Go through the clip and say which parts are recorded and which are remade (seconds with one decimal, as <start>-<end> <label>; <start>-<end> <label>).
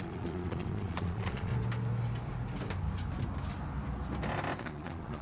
0.0-1.5 remade; 1.5-4.6 recorded; 4.6-5.2 remade